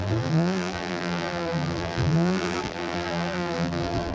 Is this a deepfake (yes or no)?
yes